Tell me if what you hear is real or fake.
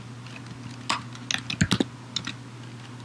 real